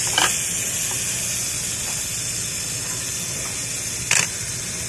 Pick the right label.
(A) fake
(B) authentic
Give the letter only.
B